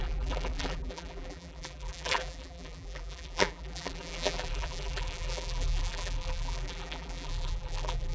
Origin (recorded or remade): remade